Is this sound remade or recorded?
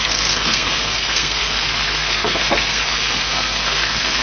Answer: remade